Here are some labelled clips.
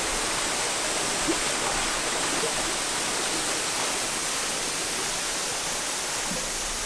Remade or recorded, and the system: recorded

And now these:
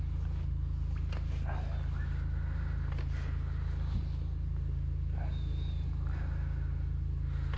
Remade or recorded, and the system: recorded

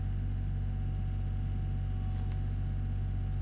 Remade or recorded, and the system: recorded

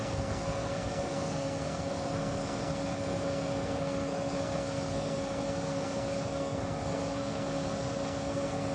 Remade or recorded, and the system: remade, codec, SNAC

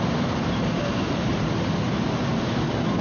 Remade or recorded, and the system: recorded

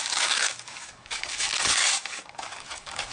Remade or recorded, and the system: remade, codec, DAC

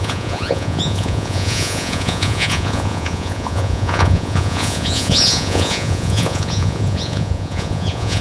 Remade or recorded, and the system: remade, vocoder, Vocos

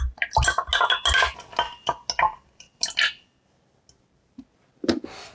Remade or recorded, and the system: recorded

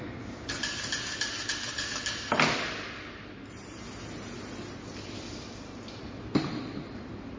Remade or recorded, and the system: recorded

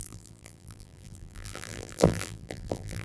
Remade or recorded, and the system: remade, vocoder, BigVGAN v2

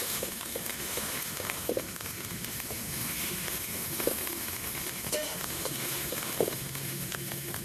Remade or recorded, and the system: remade, autoencoder, DAC-VAE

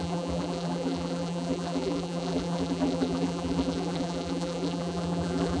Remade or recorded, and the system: remade, vocoder, BigVGAN v2